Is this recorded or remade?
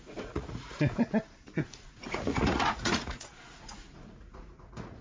remade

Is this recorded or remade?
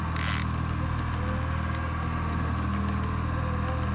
recorded